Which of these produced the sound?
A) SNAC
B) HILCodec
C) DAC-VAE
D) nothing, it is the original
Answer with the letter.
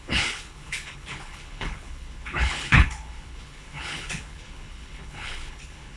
B